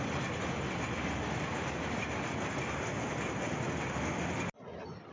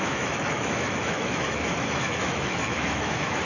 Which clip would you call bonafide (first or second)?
first